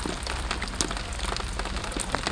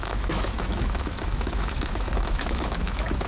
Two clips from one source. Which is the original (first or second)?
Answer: first